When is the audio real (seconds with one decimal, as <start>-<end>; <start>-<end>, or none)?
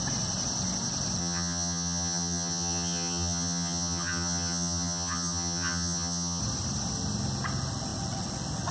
0.0-1.2; 6.4-8.7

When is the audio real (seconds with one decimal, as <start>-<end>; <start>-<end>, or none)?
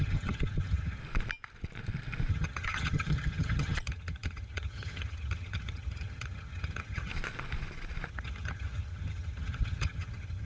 1.0-2.3; 7.1-8.1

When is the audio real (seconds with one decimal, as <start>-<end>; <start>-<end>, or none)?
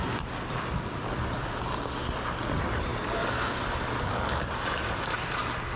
0.0-5.8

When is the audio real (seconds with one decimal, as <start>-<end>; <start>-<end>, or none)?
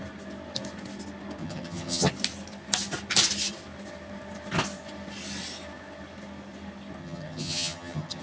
0.0-1.4; 2.1-7.0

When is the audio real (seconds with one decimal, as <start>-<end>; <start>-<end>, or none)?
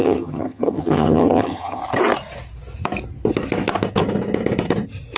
1.8-5.2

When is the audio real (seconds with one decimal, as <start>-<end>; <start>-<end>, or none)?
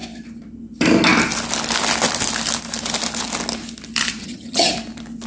0.0-4.2; 4.7-5.3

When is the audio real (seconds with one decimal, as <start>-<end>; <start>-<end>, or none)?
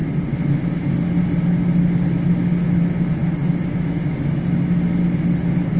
0.0-5.8